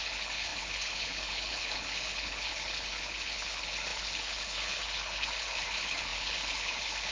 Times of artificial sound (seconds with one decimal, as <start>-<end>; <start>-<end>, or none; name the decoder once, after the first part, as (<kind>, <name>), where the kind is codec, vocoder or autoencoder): 0.0-7.1 (codec, HILCodec)